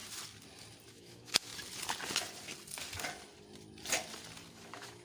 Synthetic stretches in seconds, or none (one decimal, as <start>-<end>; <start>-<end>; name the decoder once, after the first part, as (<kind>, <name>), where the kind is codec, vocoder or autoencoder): 0.9-1.5 (autoencoder, DAC-VAE); 4.5-5.0